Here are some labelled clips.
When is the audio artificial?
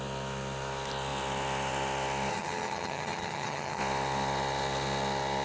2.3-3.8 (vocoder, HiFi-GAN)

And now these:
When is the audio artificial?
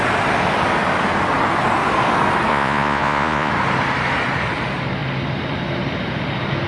2.5-3.5 (vocoder, Vocos)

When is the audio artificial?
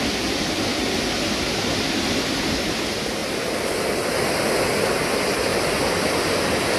0.0-0.7 (vocoder, BigVGAN v2); 2.1-3.2; 4.7-6.8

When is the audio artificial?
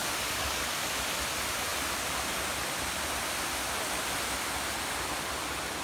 0.0-0.9 (codec, DAC)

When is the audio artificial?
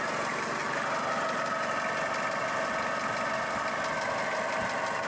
none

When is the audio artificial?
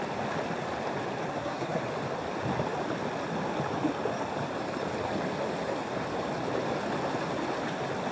1.3-1.8 (codec, SNAC)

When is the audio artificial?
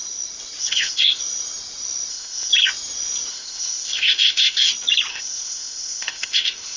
0.6-1.2 (codec, ZipCodec); 2.1-2.5; 3.3-4.6; 5.1-6.8